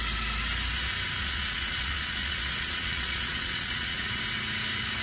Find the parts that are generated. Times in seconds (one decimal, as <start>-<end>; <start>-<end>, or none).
1.2-4.2